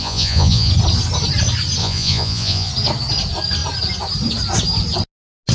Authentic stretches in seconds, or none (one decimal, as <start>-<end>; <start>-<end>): 0.7-1.8; 2.7-5.5